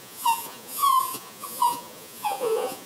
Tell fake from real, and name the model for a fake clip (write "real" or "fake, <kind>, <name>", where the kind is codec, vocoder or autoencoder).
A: fake, vocoder, Vocos